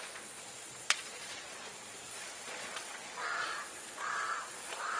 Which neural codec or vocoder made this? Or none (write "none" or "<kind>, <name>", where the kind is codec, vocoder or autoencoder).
vocoder, Vocos